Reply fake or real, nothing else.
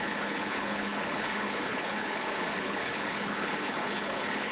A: fake